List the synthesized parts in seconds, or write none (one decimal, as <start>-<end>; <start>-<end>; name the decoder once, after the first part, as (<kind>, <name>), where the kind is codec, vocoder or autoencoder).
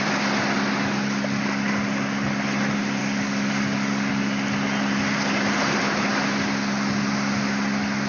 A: 3.0-4.1 (codec, DAC)